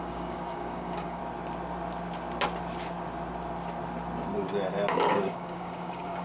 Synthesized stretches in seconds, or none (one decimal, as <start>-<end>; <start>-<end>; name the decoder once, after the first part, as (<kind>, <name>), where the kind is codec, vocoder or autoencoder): 0.0-1.2 (codec, DAC); 4.9-6.2